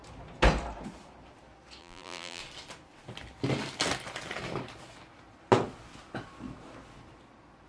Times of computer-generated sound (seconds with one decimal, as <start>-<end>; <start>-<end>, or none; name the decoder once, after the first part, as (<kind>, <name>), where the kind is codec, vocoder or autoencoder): 1.8-2.4 (vocoder, BigVGAN v2)

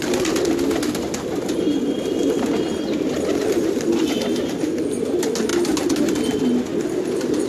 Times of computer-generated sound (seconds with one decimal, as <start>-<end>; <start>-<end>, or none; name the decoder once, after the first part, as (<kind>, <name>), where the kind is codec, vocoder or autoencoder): none

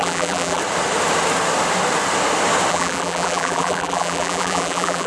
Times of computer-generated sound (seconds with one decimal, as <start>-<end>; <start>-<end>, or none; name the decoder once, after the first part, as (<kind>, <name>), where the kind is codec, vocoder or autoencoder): 0.0-0.6 (vocoder, BigVGAN v2); 2.7-5.1

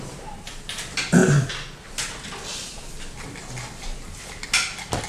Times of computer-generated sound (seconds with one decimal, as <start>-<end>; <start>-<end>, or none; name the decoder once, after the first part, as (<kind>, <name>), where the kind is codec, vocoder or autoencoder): none

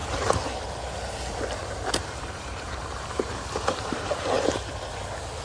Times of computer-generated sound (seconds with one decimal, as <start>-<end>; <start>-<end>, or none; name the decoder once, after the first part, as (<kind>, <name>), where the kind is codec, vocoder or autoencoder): 1.6-4.8 (vocoder, BigVGAN v2)